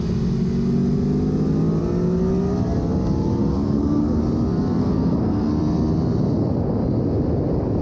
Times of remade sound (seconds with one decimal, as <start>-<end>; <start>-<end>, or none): 3.4-4.2; 4.8-5.5